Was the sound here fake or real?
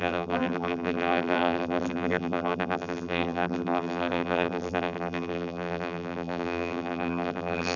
fake